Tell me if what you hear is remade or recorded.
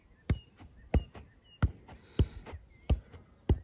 recorded